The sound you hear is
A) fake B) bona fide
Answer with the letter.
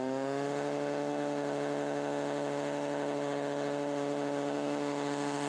A